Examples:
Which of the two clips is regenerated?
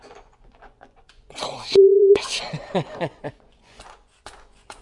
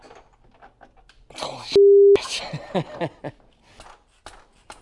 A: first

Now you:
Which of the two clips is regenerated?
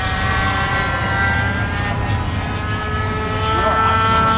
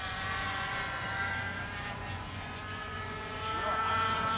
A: second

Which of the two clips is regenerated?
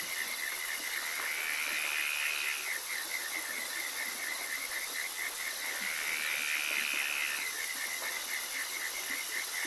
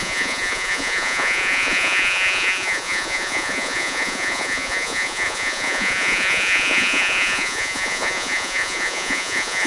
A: second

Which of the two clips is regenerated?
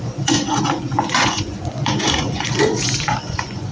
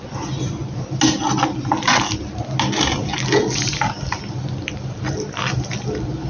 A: first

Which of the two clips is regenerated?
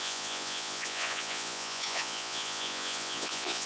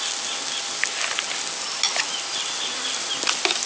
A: first